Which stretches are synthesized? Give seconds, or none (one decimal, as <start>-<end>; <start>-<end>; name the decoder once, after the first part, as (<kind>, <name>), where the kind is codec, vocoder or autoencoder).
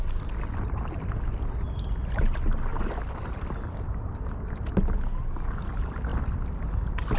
2.7-5.0 (vocoder, BigVGAN v2); 6.1-6.7